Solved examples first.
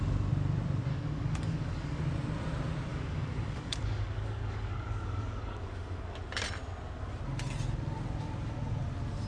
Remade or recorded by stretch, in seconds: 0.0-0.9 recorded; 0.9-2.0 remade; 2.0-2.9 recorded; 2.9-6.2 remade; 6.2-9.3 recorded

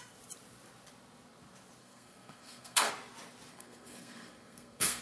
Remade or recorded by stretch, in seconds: 0.0-1.8 recorded; 1.8-2.9 remade; 2.9-3.5 recorded; 3.5-5.0 remade

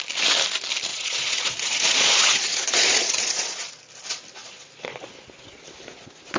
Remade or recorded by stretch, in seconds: 0.0-0.9 recorded; 0.9-3.7 remade; 3.7-4.4 recorded; 4.4-5.1 remade; 5.1-6.4 recorded

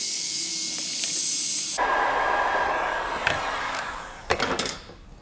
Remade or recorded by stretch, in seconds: 0.0-0.5 remade; 0.5-3.6 recorded; 3.6-5.2 remade

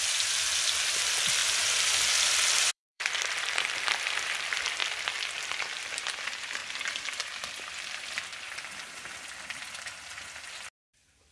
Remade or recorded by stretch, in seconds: 0.0-1.4 remade; 1.4-2.7 recorded; 2.7-4.8 remade; 4.8-5.4 recorded; 5.4-6.6 remade; 6.6-7.2 recorded; 7.2-8.3 remade; 8.3-10.7 recorded; 10.7-11.3 remade